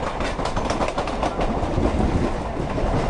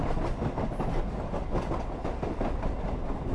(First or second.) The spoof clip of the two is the first